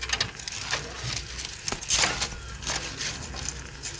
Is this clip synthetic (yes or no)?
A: no